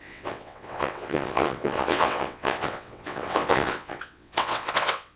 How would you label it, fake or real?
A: fake